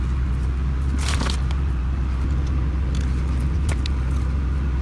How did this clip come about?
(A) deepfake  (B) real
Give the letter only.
B